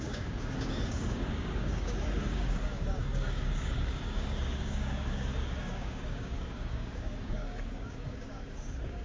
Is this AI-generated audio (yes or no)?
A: yes